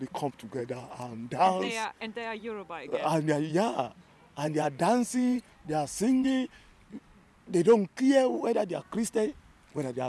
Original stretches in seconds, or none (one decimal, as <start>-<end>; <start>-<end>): 0.0-0.6; 2.4-3.5; 6.7-10.1